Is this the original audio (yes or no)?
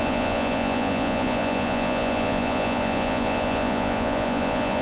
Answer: no